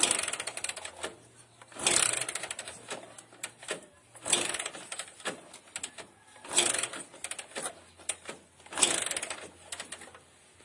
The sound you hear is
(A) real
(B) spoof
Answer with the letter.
A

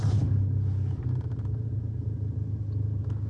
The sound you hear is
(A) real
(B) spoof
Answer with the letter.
A